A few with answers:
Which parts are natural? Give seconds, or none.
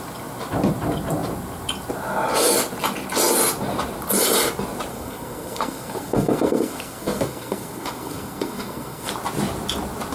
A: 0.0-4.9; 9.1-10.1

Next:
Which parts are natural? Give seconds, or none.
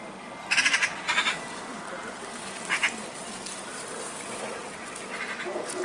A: 0.0-5.8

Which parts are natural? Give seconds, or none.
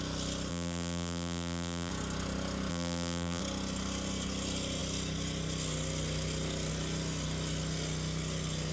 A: 0.0-0.5; 1.9-2.7; 3.4-8.7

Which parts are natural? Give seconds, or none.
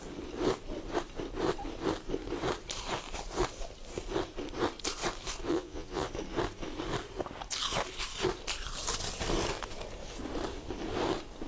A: 0.0-5.5; 6.1-11.5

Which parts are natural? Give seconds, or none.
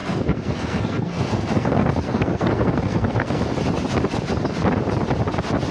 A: 3.4-5.7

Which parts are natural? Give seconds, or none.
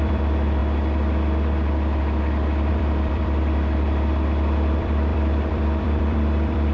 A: 0.6-2.7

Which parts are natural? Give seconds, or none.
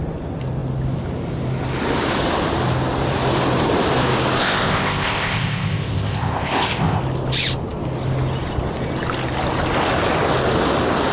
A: 0.0-4.4; 7.0-11.1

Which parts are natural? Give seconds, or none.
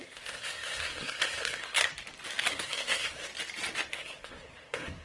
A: 1.9-2.5; 3.3-3.9